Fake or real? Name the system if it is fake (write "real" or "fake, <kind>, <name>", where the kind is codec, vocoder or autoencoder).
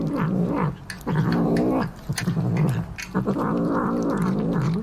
real